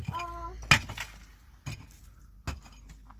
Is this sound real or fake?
real